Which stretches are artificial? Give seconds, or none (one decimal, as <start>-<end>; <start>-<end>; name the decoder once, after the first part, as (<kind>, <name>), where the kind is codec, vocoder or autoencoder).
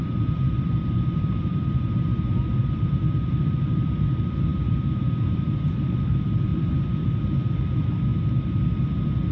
0.0-8.1 (vocoder, BigVGAN v2)